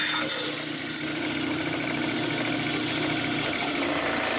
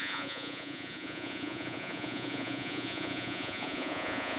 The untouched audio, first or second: first